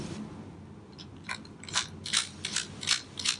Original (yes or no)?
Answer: yes